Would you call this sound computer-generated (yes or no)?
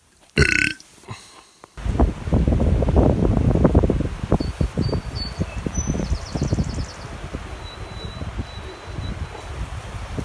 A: no